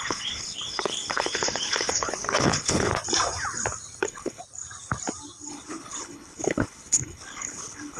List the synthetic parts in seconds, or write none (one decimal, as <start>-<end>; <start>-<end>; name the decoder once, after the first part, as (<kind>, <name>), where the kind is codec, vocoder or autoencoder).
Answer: 0.0-2.9 (codec, HILCodec); 4.0-4.4; 5.5-8.0

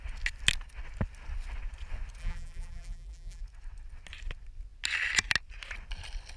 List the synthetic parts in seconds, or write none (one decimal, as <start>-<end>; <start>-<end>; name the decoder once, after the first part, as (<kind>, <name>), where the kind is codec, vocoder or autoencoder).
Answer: 2.2-3.4 (vocoder, BigVGAN v2)